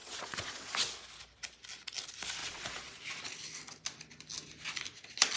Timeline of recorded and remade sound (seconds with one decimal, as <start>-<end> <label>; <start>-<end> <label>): 0.0-0.7 remade; 0.7-2.4 recorded; 2.4-3.0 remade; 3.0-5.4 recorded